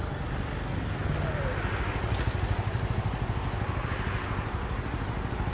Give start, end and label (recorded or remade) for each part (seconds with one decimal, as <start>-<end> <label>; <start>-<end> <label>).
0.0-5.5 recorded